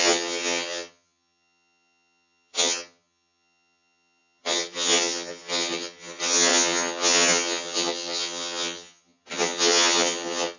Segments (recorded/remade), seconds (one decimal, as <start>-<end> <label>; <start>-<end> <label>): 0.0-10.6 remade

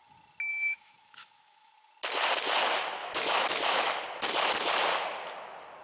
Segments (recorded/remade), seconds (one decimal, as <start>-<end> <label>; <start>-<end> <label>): 0.0-0.5 recorded; 0.5-1.7 remade; 1.7-3.0 recorded; 3.0-4.0 remade; 4.0-5.8 recorded

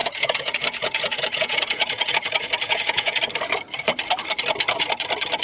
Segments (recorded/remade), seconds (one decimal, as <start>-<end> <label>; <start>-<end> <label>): 0.0-3.2 remade; 3.2-5.4 recorded

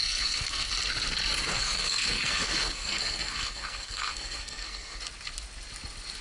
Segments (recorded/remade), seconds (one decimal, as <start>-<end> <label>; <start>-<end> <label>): 0.0-0.7 remade; 0.7-1.5 recorded; 1.5-5.0 remade; 5.0-6.2 recorded